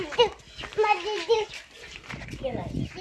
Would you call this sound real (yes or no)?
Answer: yes